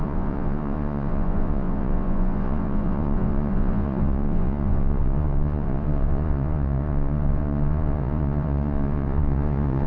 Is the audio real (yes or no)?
no